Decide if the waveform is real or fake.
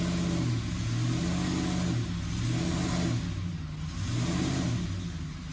real